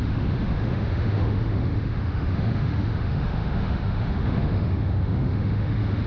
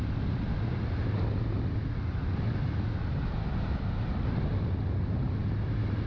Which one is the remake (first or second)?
first